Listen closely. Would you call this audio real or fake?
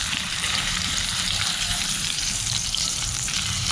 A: fake